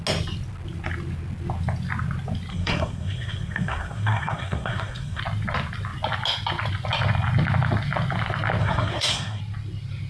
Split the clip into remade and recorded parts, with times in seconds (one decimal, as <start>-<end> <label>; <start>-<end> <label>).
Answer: 0.0-2.5 recorded; 2.5-5.2 remade; 5.2-8.6 recorded; 8.6-9.4 remade; 9.4-10.1 recorded